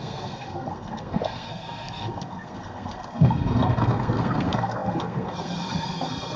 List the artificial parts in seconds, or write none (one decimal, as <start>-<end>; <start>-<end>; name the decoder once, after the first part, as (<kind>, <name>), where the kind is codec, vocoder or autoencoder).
0.0-6.4 (codec, SNAC)